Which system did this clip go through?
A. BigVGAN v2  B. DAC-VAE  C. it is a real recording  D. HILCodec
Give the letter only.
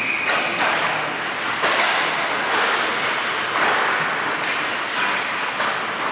C